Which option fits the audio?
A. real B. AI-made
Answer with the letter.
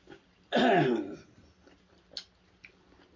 A